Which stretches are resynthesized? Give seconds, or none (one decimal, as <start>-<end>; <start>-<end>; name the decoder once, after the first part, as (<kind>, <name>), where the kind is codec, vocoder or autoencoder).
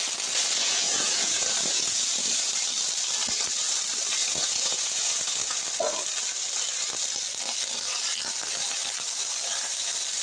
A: 0.6-2.5 (vocoder, Vocos); 4.2-5.6